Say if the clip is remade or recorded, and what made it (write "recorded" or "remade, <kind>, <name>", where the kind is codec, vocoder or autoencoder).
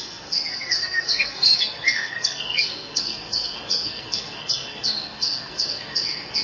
remade, codec, SNAC